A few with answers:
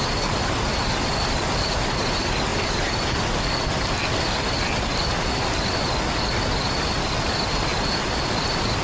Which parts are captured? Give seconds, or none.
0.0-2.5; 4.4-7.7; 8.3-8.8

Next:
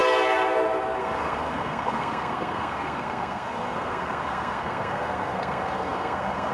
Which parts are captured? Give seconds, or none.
0.0-1.0